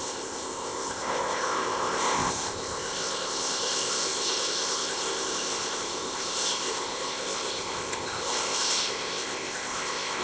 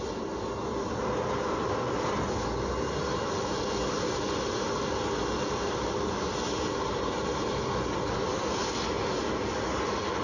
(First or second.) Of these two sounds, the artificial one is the first